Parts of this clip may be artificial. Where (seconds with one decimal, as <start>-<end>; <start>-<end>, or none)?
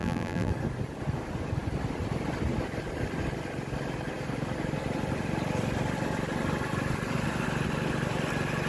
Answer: 0.0-0.5